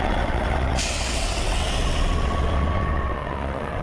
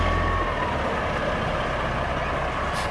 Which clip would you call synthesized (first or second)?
first